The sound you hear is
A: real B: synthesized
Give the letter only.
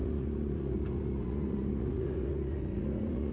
B